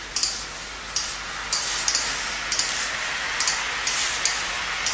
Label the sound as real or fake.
real